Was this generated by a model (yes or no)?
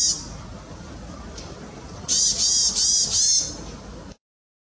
no